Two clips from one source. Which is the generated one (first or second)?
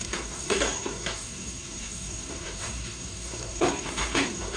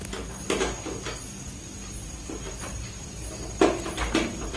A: first